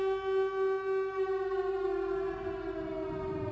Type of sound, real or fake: real